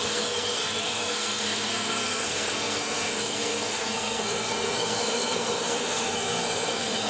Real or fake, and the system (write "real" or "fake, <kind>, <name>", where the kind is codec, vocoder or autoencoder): fake, codec, SNAC